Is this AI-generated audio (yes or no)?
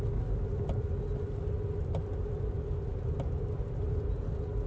no